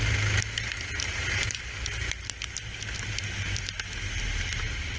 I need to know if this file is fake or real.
real